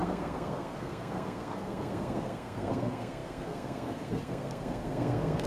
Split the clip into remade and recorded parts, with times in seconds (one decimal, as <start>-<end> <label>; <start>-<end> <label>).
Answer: 0.0-5.5 remade